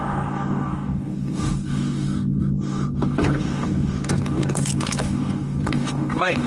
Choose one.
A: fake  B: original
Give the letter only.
A